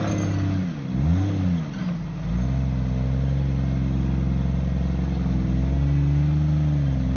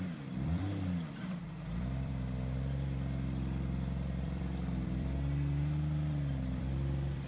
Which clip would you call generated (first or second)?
second